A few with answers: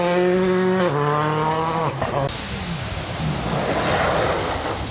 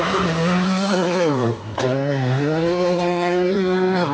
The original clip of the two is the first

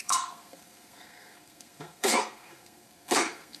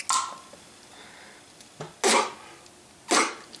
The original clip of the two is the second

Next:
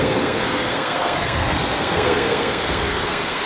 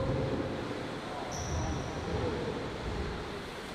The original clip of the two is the second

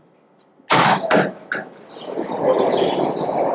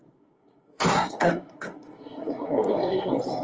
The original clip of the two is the first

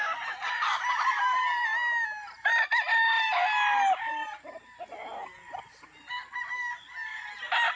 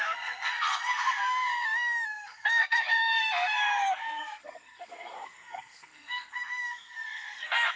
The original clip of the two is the first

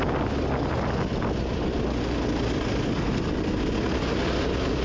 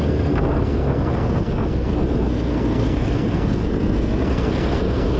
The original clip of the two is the first